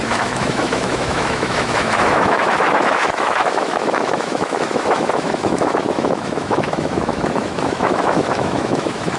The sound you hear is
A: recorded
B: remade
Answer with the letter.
B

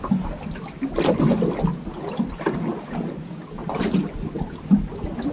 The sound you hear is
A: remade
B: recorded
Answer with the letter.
B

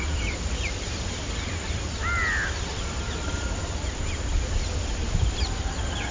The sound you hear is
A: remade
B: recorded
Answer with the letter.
B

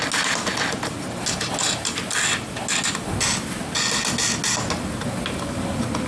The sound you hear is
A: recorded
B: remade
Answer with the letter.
A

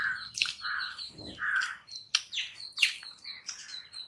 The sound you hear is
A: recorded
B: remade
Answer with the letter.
A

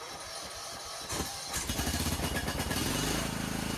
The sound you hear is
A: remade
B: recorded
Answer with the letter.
B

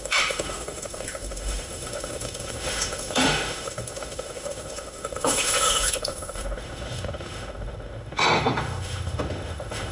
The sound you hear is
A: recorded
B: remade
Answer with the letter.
B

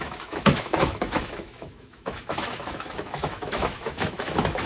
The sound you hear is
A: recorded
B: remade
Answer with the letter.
B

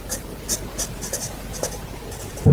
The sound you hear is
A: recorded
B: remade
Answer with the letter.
A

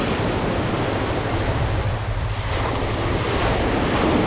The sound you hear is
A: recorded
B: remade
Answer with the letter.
A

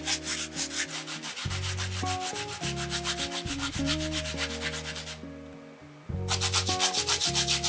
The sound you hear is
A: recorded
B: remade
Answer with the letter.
A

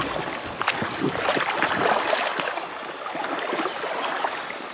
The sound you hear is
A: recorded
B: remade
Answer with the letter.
A